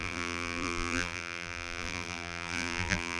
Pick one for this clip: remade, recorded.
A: remade